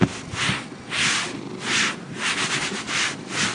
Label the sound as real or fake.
real